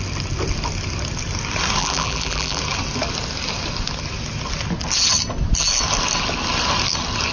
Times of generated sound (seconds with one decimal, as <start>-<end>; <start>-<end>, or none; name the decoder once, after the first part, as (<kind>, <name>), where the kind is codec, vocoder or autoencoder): 1.8-2.6 (vocoder, BigVGAN v2)